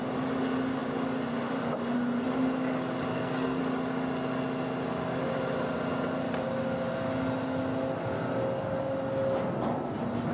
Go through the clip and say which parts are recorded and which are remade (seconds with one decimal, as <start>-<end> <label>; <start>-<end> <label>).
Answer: 0.0-3.1 recorded; 3.1-3.6 remade; 3.6-10.3 recorded